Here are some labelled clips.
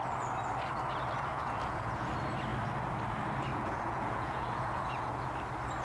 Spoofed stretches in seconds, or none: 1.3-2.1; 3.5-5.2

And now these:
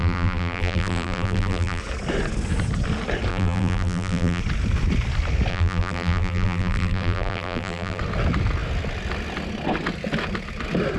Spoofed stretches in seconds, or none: 0.0-1.8; 3.3-4.4; 5.5-8.0

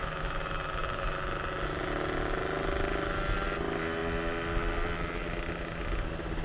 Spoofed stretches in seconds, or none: none